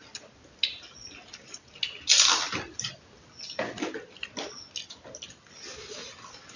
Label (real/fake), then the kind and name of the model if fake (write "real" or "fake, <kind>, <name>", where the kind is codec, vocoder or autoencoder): real